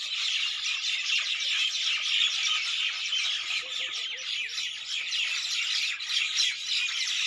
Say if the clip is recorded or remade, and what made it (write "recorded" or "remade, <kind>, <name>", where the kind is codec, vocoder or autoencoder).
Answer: recorded